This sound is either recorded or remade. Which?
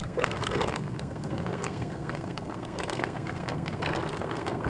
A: remade